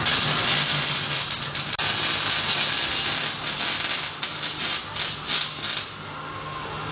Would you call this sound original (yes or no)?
yes